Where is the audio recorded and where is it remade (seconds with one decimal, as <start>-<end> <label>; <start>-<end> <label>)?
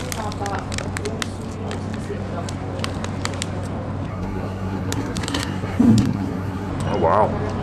0.0-4.1 recorded; 4.1-6.7 remade; 6.7-7.6 recorded